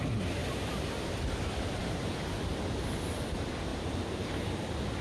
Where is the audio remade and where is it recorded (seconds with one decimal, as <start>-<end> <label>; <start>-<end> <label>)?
0.0-1.8 recorded; 1.8-2.5 remade; 2.5-3.7 recorded; 3.7-4.5 remade; 4.5-5.0 recorded